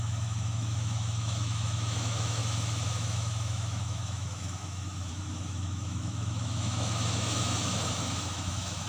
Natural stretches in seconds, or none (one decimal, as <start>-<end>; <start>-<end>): none